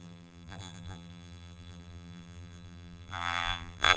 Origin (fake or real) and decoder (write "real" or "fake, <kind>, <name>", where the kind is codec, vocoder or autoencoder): fake, vocoder, BigVGAN v2